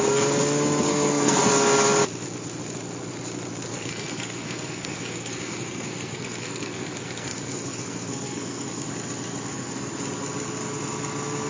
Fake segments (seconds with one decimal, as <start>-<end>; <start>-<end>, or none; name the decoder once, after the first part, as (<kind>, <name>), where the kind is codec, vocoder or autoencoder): 0.9-1.5 (codec, SNAC); 3.7-8.9; 9.5-10.0